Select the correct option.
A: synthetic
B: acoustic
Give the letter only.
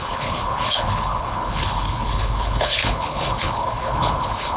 A